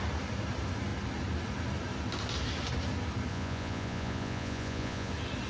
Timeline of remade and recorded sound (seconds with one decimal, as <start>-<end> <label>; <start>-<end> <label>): 0.0-3.3 recorded; 3.3-5.1 remade; 5.1-5.5 recorded